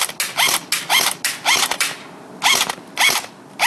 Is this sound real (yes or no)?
yes